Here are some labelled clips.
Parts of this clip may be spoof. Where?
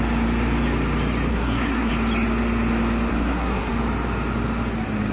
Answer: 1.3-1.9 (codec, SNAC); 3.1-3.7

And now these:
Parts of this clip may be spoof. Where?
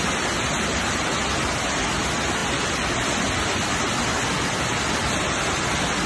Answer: none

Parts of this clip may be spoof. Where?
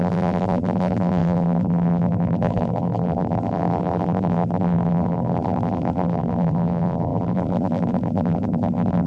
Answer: 0.0-9.1 (vocoder, BigVGAN v2)